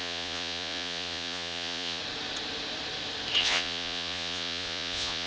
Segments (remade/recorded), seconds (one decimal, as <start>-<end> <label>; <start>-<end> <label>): 0.0-2.0 remade; 2.0-3.4 recorded; 3.4-5.3 remade